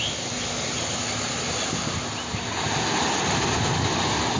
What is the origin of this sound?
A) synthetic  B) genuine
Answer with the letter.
B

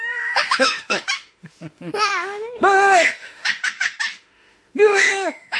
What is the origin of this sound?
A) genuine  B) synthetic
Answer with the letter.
B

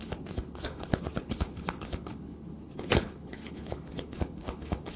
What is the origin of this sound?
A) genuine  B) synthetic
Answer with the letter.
B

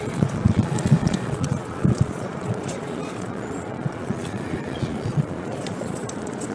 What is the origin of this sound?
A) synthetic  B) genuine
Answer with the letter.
A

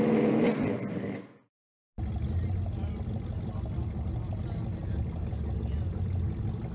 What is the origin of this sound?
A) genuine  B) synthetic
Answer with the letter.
A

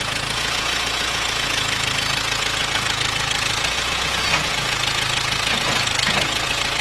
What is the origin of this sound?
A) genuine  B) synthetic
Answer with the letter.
B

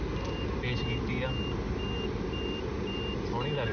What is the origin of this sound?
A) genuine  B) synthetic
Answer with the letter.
A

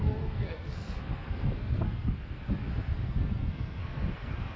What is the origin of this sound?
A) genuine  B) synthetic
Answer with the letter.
B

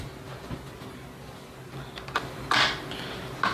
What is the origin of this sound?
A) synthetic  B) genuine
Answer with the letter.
B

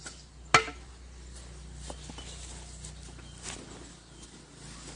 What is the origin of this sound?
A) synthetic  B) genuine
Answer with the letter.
B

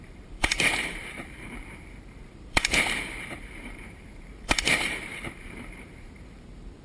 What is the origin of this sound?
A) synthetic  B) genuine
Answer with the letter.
A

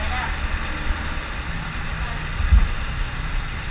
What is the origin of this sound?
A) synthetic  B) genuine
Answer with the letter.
B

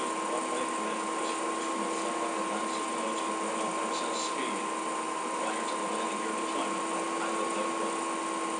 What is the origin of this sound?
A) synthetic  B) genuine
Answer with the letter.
B